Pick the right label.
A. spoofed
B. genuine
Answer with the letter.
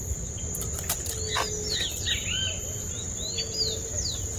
B